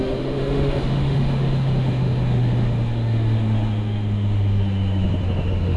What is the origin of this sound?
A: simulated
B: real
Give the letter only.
A